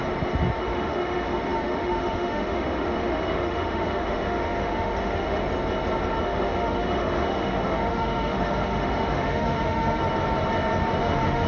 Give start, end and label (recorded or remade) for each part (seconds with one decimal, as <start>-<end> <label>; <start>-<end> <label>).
0.0-0.6 recorded; 0.6-5.4 remade; 5.4-6.2 recorded; 6.2-10.0 remade; 10.0-11.0 recorded; 11.0-11.5 remade